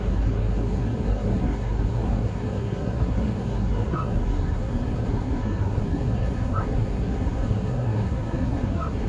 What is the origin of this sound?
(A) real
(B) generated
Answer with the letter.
B